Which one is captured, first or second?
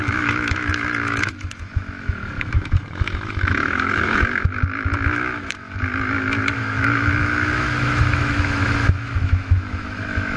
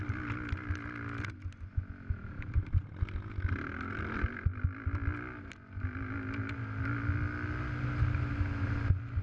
second